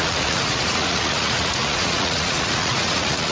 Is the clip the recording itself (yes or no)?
no